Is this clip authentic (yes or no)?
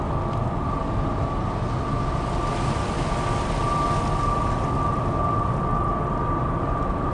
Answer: yes